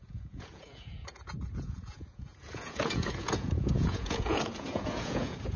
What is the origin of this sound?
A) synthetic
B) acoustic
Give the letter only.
A